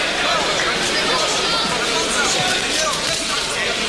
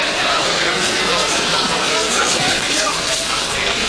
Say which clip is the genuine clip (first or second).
first